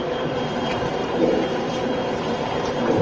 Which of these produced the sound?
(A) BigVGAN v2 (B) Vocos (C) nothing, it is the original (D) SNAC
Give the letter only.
A